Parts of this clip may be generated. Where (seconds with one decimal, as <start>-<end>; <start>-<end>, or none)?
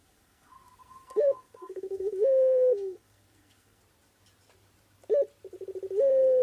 0.0-3.8